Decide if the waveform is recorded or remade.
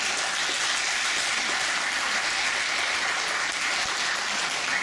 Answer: recorded